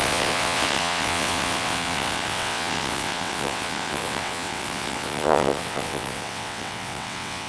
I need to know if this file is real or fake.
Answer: fake